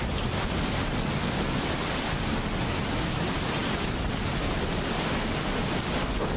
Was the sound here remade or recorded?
recorded